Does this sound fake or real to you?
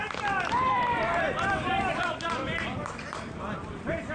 fake